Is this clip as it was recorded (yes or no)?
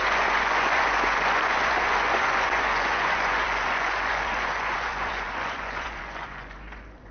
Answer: no